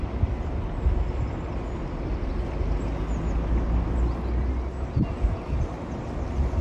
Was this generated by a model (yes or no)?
no